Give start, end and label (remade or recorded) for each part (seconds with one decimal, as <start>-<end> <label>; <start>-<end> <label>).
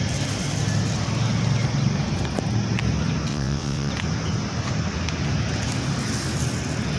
0.0-3.3 recorded; 3.3-3.9 remade; 3.9-7.0 recorded